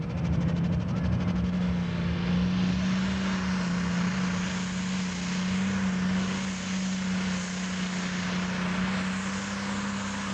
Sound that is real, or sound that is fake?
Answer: real